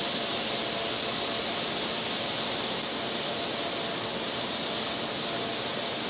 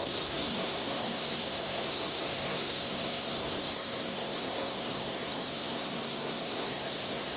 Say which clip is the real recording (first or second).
first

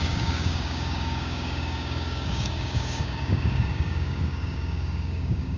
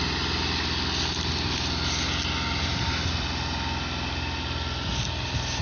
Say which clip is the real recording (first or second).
second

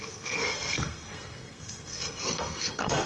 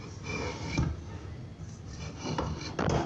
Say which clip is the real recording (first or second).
second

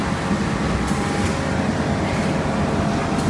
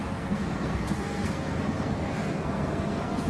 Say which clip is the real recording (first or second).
first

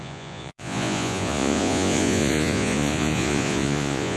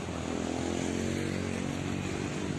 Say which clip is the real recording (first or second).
second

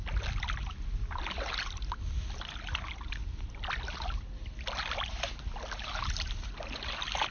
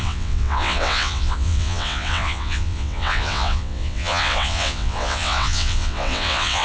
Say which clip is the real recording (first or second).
first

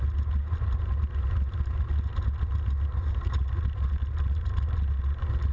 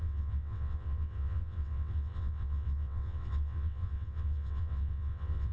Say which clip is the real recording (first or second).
first